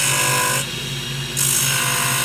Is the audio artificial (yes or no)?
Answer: no